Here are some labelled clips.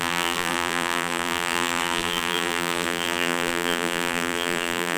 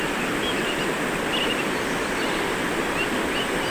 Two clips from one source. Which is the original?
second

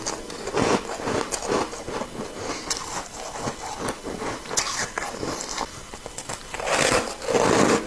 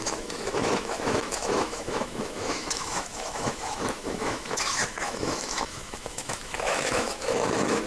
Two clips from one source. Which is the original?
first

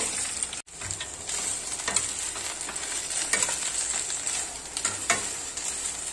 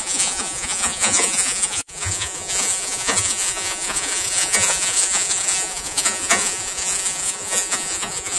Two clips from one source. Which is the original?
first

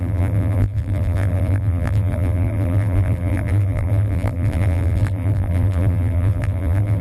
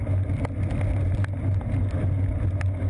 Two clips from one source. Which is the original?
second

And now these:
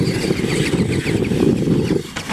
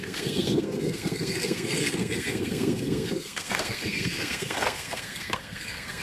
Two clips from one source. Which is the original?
first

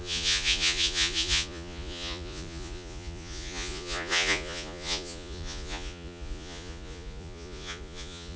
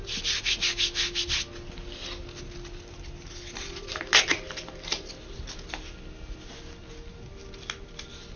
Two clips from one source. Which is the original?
second